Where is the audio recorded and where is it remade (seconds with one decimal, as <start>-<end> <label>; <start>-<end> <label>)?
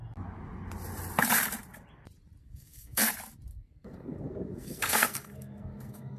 0.0-2.4 recorded; 2.4-3.1 remade; 3.1-3.5 recorded; 3.5-6.2 remade